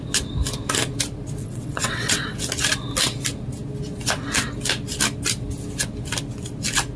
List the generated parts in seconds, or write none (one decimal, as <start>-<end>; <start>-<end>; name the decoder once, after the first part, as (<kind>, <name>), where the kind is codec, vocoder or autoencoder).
1.4-2.4 (vocoder, WaveNeXt)